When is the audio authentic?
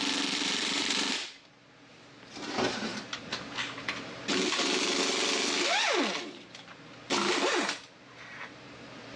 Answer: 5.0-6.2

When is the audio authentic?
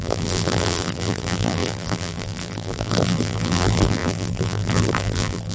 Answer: none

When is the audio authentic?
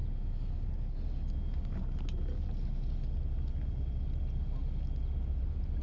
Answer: 0.0-5.8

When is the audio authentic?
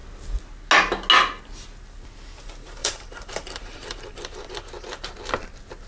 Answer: 0.0-2.8; 4.5-5.9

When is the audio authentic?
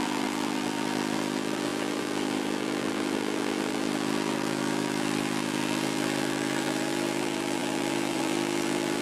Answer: none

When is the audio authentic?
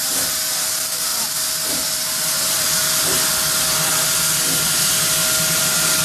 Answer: 0.0-6.0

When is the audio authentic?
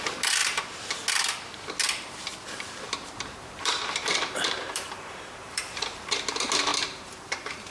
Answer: 0.4-2.5